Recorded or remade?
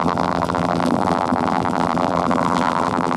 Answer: remade